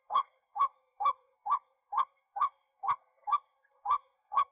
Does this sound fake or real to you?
fake